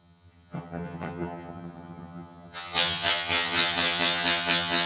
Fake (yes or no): yes